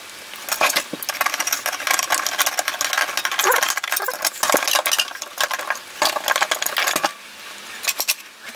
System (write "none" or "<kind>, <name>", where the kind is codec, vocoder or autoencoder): none